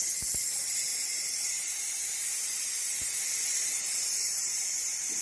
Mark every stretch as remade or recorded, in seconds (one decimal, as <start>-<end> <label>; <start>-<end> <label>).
0.0-5.2 recorded